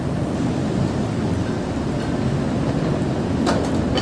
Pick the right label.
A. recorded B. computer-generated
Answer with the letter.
A